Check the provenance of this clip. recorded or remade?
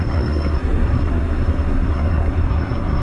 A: remade